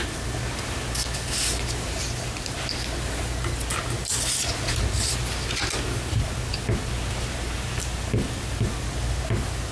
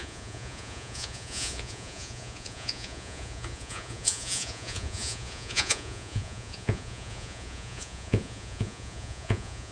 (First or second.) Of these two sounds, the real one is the first